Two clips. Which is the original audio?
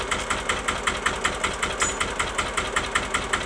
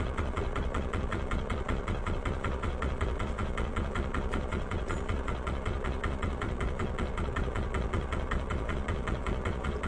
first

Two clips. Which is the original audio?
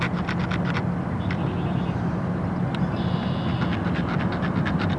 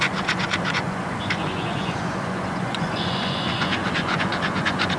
first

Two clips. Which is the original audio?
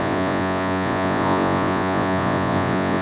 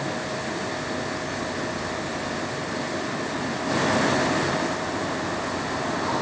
second